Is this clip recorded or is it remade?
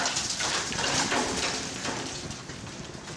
recorded